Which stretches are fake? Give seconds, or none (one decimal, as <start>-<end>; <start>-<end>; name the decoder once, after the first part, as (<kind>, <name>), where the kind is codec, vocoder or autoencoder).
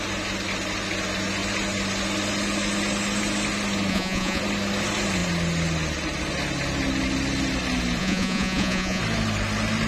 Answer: 3.9-4.4 (vocoder, Vocos); 8.0-9.0